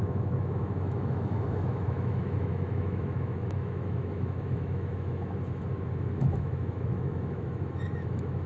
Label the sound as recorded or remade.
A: remade